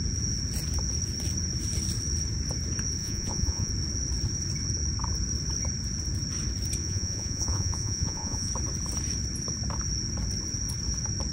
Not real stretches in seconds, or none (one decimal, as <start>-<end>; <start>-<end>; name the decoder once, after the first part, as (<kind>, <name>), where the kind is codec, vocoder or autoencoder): 3.0-3.7 (vocoder, Vocos); 6.8-8.5